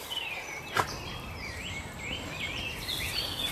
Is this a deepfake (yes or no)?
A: yes